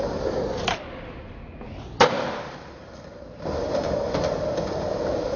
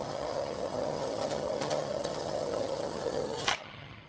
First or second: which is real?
first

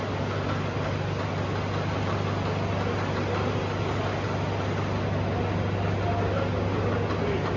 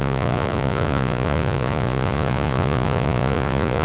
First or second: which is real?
first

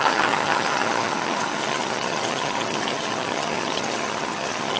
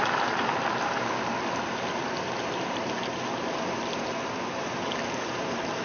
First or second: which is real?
second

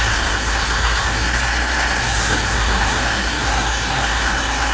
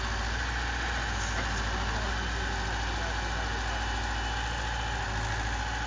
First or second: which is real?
second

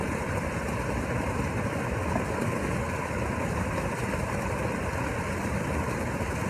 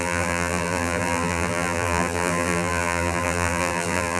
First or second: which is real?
first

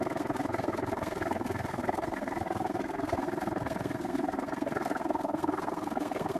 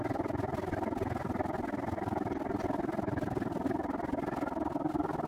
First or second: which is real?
second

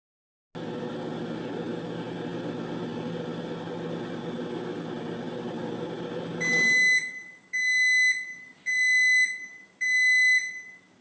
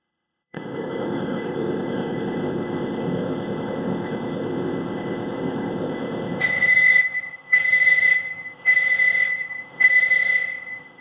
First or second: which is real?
first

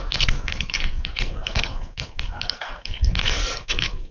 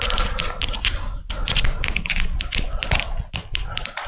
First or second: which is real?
second